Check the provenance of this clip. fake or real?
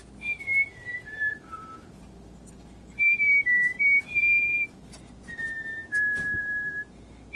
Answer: real